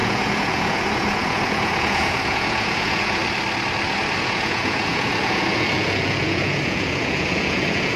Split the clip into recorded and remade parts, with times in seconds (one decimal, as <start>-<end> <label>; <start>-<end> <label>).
0.0-3.2 remade; 3.2-4.2 recorded; 4.2-8.0 remade